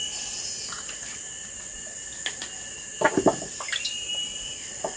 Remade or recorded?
recorded